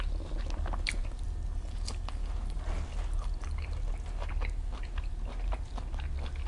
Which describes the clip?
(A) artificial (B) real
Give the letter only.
B